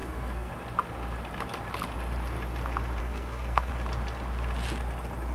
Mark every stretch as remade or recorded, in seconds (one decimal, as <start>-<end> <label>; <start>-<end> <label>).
0.0-0.5 remade; 0.5-3.0 recorded; 3.0-3.7 remade; 3.7-5.3 recorded